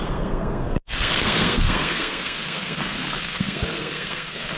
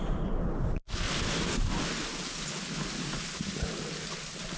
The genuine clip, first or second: second